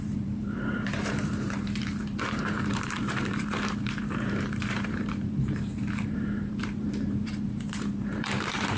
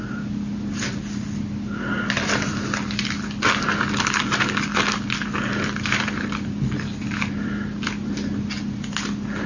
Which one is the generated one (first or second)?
first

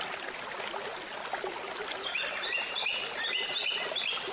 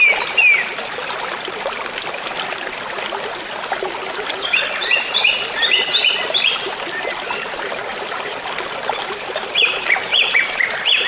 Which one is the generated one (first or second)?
second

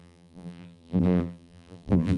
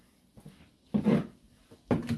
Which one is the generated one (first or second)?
first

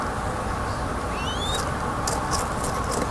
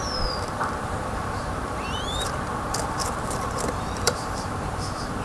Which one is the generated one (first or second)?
second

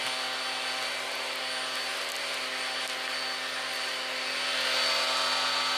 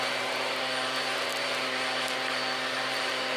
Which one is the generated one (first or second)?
second